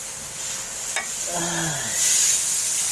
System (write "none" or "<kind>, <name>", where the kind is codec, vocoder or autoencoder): none